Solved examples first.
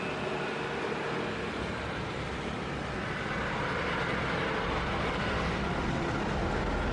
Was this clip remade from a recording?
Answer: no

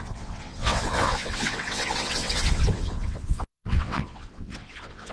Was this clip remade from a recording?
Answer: yes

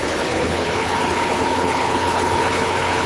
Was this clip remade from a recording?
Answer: yes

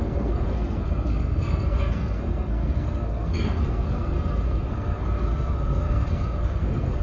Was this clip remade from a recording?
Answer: yes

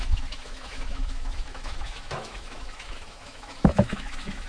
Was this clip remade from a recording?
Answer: yes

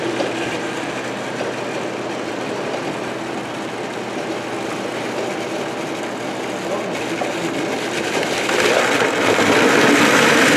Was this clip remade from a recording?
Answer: no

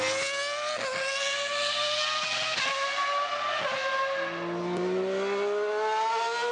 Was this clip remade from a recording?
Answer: no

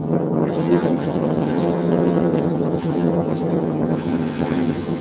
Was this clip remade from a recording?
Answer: yes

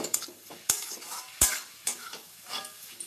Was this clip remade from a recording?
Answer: yes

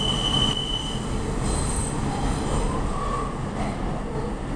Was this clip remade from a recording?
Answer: no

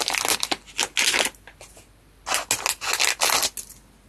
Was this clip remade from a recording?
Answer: no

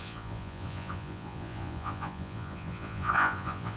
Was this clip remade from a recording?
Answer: yes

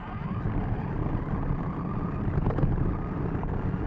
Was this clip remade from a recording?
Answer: no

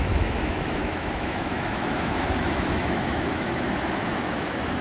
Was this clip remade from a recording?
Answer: yes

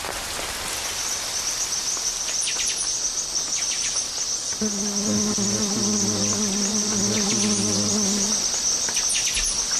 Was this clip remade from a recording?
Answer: no